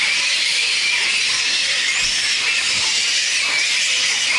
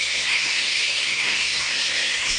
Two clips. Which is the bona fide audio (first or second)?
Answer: first